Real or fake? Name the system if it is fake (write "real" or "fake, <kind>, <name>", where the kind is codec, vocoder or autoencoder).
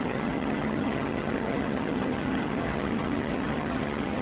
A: fake, vocoder, HiFi-GAN